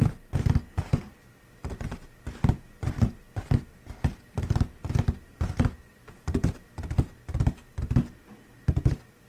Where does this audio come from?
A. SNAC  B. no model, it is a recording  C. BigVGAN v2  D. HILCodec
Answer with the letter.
B